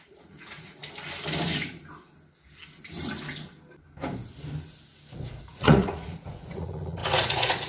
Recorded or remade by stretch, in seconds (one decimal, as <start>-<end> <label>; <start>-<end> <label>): 0.0-0.8 remade; 0.8-5.4 recorded; 5.4-7.7 remade